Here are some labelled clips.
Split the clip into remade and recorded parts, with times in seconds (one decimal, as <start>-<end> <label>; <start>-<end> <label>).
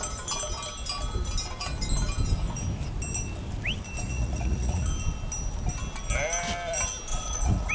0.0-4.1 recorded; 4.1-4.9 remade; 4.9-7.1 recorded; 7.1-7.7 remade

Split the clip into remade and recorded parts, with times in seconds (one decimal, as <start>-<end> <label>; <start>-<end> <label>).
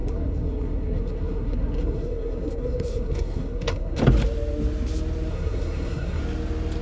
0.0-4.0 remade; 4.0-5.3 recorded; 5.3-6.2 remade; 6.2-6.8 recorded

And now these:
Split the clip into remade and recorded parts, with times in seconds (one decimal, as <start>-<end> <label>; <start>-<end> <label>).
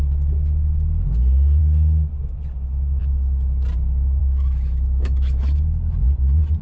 0.0-4.2 recorded; 4.2-5.6 remade; 5.6-6.6 recorded